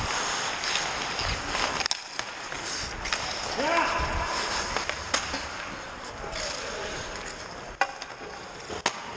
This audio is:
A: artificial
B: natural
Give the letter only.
B